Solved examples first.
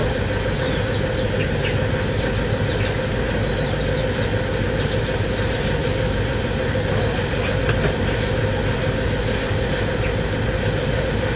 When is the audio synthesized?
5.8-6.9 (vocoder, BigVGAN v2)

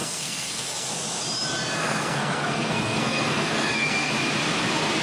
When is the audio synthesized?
0.0-0.9 (codec, SNAC); 1.8-4.1

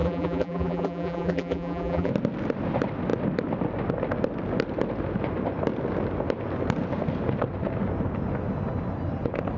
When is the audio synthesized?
0.0-2.1 (vocoder, BigVGAN v2)

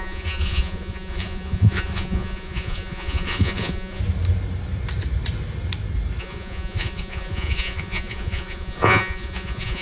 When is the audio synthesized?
0.0-4.0 (vocoder, Vocos); 6.2-9.8

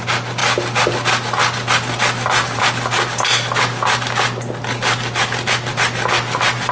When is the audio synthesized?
none

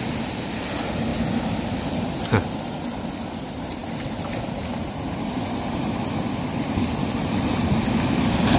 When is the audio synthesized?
none